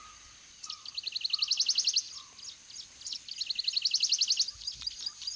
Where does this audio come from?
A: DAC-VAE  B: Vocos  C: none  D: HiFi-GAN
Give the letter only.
C